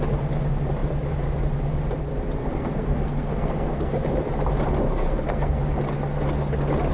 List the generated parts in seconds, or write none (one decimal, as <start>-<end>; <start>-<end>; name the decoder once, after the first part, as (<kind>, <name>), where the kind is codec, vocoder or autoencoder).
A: 2.4-3.9 (codec, SNAC); 4.9-5.6